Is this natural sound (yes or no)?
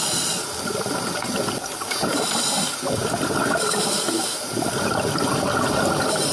yes